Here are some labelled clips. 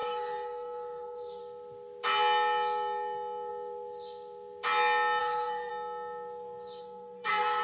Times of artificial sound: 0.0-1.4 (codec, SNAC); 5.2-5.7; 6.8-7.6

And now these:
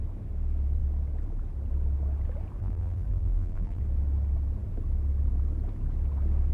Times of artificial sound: 2.6-3.8 (vocoder, BigVGAN v2)

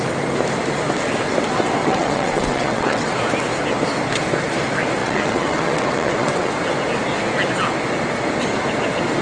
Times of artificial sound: 1.8-3.1 (vocoder, WaveNeXt); 5.0-6.5

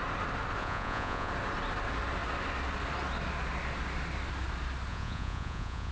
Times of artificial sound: 0.6-1.3 (vocoder, Vocos); 4.9-5.9